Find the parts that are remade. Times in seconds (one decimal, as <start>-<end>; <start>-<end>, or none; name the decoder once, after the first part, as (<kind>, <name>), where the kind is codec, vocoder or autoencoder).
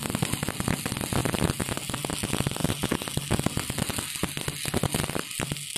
none